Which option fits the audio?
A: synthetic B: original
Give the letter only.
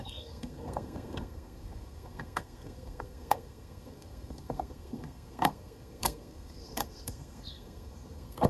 A